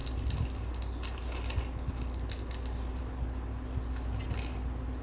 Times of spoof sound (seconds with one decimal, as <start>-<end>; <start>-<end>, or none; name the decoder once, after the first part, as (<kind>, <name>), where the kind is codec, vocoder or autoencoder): none